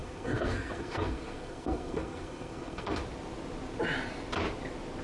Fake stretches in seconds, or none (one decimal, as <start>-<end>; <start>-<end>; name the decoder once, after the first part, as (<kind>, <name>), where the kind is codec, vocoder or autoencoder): 0.0-3.0 (codec, SNAC)